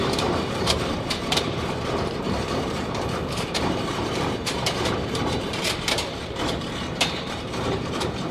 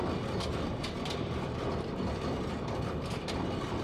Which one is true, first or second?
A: second